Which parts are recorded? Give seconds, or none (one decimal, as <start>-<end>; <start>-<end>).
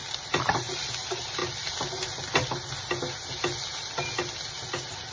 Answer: 0.6-5.1